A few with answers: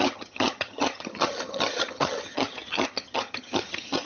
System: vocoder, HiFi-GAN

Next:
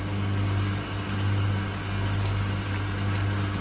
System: none